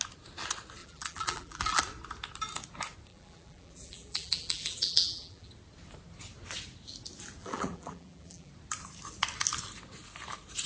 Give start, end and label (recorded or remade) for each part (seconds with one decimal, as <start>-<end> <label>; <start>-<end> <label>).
0.0-0.8 recorded; 0.8-1.8 remade; 1.8-3.1 recorded; 3.1-5.5 remade; 5.5-7.4 recorded; 7.4-8.5 remade; 8.5-10.7 recorded